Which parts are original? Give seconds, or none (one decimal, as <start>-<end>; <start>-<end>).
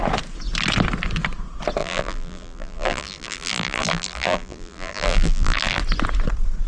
0.0-1.8; 5.8-6.7